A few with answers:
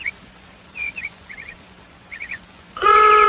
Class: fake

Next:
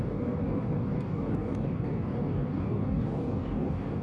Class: fake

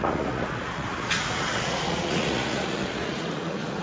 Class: fake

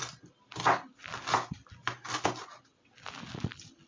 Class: real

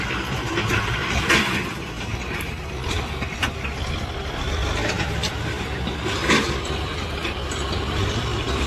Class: fake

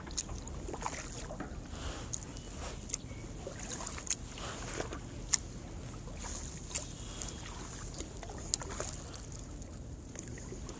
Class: real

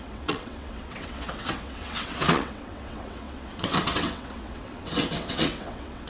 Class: fake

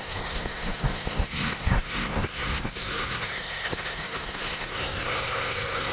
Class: fake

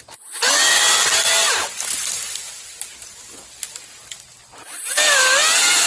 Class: real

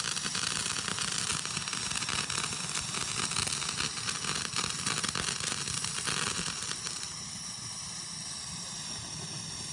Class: real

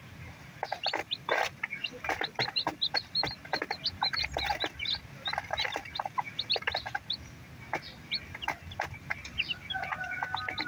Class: real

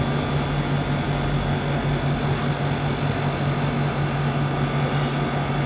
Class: real